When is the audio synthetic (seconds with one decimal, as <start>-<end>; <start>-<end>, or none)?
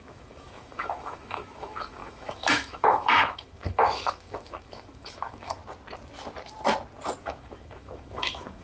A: 0.0-5.6; 7.2-8.6